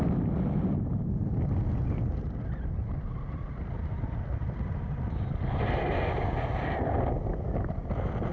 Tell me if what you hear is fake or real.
real